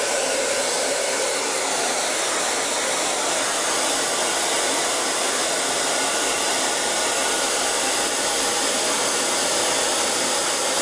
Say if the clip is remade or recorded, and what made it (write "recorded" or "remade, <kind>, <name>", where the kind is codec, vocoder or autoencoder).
remade, vocoder, BigVGAN v2